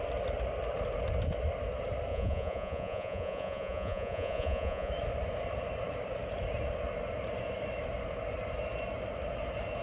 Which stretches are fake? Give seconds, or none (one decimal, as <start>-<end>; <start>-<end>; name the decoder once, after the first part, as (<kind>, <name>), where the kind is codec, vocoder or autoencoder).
2.1-4.9 (vocoder, Vocos)